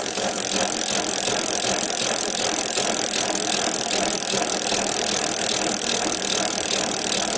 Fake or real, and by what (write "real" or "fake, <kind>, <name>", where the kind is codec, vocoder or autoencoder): real